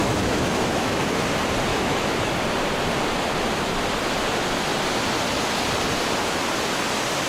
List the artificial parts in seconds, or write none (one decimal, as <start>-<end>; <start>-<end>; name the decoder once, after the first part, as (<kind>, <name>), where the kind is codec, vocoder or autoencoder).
0.0-1.0 (autoencoder, DAC-VAE); 1.7-2.3